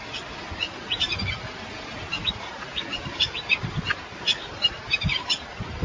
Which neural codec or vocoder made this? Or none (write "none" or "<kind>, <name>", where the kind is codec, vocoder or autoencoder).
none